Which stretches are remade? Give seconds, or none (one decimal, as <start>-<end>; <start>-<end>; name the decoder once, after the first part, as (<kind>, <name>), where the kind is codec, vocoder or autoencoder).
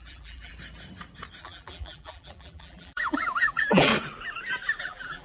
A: 0.0-0.5 (vocoder, BigVGAN v2); 1.4-3.9; 4.8-5.2